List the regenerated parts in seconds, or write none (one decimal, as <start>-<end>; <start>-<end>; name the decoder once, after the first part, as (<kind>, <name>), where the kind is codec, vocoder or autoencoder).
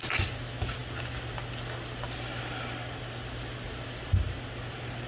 none